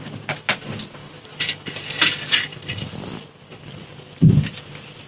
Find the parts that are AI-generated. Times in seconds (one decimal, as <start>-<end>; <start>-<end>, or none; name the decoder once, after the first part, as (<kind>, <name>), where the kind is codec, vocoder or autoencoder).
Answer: none